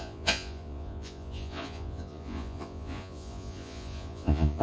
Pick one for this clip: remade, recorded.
remade